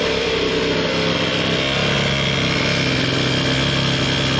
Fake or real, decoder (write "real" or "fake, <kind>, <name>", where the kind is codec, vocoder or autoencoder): real